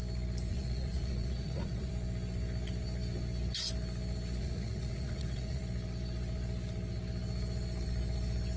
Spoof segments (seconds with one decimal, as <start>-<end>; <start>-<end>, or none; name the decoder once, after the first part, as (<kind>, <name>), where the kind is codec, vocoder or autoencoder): 0.5-1.9 (vocoder, Vocos); 4.4-5.6

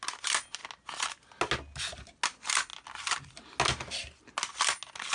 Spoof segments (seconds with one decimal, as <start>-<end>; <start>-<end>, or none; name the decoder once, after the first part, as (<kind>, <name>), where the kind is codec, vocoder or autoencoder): none

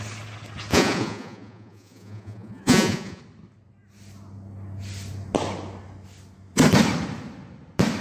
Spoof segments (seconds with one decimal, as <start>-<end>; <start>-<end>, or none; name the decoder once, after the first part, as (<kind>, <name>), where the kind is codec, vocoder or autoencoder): 0.7-3.2 (vocoder, Vocos)

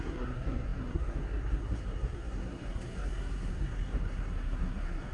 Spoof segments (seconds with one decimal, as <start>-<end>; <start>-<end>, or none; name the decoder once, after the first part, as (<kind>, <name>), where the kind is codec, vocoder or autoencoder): 0.0-5.1 (codec, SNAC)

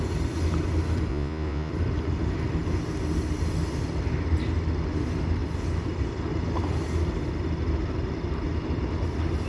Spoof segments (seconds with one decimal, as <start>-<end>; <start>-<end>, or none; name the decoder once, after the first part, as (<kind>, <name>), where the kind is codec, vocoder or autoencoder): 1.1-1.7 (vocoder, Vocos)